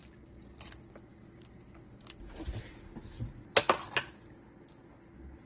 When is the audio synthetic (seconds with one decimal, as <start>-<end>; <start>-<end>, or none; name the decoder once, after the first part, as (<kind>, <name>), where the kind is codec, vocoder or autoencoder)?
none